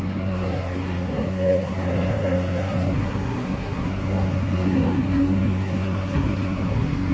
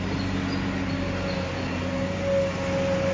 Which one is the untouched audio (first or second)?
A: second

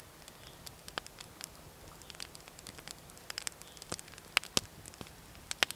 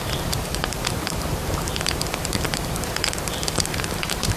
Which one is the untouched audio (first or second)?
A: first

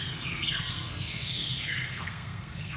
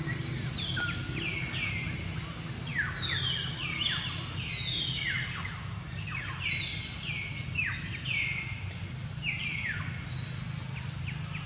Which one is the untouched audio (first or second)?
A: second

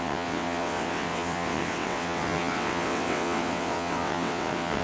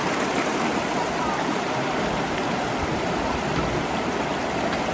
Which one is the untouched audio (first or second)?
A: second